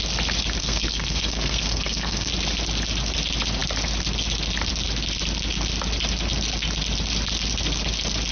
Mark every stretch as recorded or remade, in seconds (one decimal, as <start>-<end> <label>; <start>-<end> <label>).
0.0-0.6 recorded; 0.6-2.3 remade; 2.3-8.3 recorded